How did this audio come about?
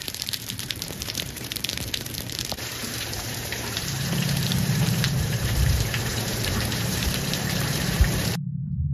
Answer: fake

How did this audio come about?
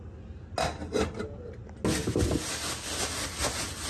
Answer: real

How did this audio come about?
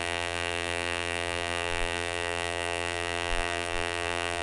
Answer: fake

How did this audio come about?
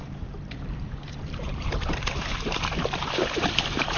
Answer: fake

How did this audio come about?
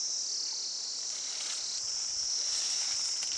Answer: real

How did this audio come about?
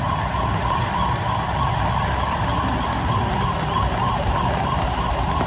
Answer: real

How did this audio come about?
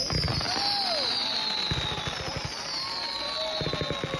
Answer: real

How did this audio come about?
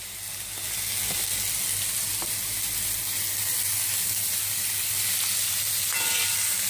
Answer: real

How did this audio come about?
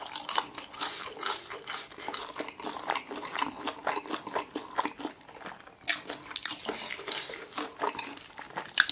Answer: real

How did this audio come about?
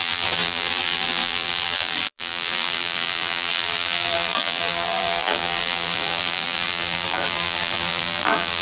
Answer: fake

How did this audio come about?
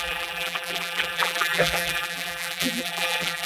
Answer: fake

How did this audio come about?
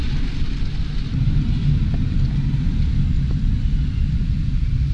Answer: real